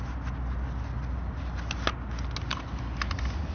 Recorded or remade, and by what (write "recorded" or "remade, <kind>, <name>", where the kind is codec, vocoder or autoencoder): recorded